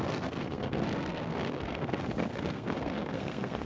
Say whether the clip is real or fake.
fake